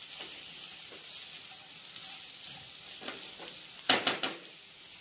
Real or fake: real